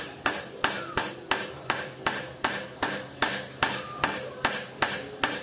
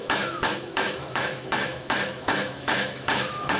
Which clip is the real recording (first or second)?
first